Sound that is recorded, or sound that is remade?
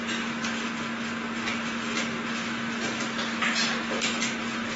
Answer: recorded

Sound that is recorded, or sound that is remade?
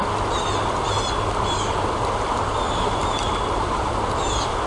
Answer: recorded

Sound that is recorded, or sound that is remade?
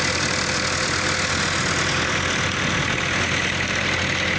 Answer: recorded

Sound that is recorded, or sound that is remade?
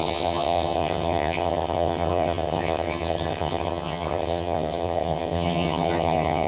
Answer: remade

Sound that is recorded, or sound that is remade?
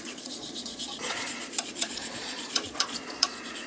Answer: remade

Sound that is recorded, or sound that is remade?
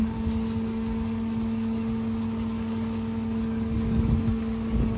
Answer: remade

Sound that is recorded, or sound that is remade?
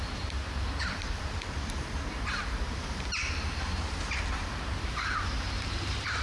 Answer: remade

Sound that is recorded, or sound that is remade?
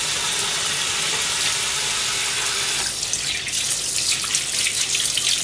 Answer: recorded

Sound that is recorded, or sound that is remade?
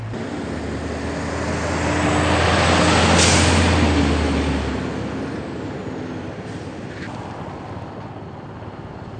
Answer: recorded